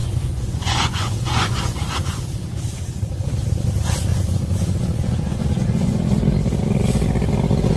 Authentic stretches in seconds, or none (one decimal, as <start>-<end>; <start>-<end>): 2.2-4.1; 6.0-7.8